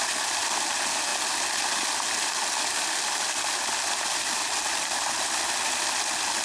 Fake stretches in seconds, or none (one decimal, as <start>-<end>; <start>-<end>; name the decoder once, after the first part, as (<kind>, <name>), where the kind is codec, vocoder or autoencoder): none